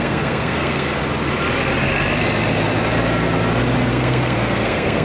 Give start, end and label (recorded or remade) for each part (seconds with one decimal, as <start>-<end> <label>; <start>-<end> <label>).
0.0-1.0 remade; 1.0-3.9 recorded; 3.9-5.0 remade